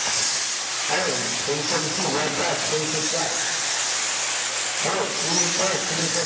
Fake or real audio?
real